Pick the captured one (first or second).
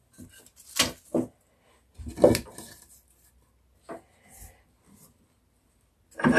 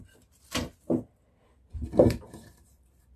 first